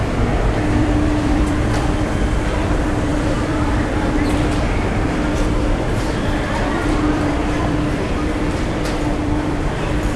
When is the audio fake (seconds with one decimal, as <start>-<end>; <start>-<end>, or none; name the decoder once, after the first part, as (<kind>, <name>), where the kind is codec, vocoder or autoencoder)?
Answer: 0.0-10.2 (vocoder, BigVGAN v2)